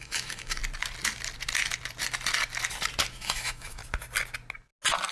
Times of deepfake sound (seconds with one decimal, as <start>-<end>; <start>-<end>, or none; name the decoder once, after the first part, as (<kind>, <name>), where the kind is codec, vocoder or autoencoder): 0.0-0.6 (autoencoder, DAC-VAE); 3.1-3.8